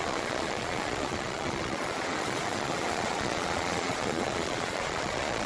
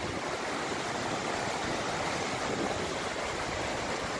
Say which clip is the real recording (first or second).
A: second